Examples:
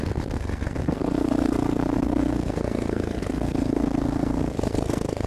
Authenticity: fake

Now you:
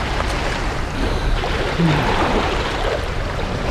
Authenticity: fake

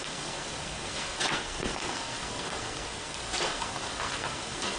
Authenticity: fake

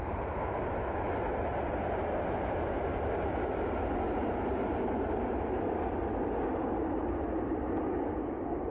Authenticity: real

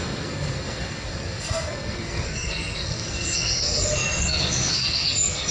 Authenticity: fake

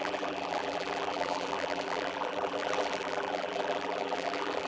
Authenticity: fake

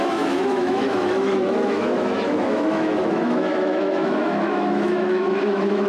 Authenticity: fake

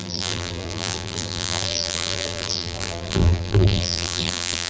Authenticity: fake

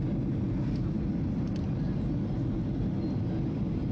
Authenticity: real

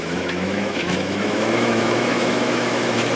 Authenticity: fake